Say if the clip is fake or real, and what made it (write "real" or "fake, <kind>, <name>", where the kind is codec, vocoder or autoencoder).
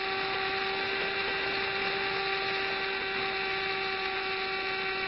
real